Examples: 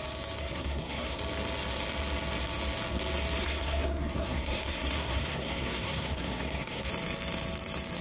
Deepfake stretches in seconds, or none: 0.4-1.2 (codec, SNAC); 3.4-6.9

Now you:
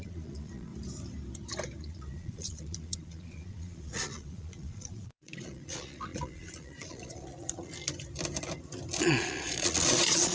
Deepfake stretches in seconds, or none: 0.0-0.7 (vocoder, Vocos); 1.8-7.7; 9.0-10.3

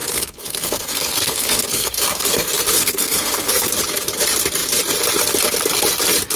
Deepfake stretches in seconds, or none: 0.0-3.7 (codec, SNAC)

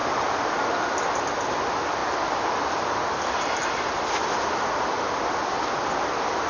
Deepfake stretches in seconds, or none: 0.0-6.5 (vocoder, BigVGAN v2)

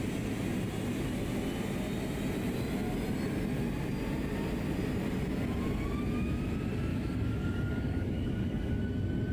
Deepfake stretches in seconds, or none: 6.9-8.8 (codec, DAC)